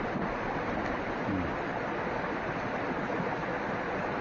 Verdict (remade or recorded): recorded